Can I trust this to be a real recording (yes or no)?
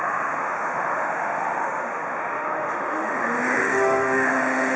no